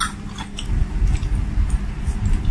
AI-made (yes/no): no